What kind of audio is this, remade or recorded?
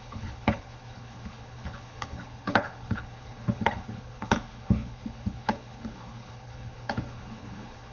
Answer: remade